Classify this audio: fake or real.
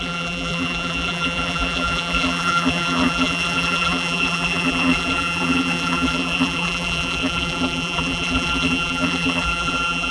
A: fake